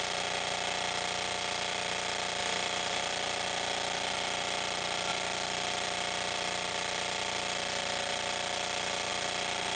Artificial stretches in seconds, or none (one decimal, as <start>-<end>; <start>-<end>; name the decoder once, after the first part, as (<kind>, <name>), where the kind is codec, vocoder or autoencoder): 2.4-3.0 (vocoder, BigVGAN v2)